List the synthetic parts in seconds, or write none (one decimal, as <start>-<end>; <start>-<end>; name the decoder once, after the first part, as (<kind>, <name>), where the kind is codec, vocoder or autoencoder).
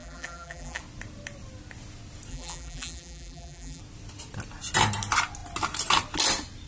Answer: 0.0-0.8 (vocoder, BigVGAN v2); 2.3-3.8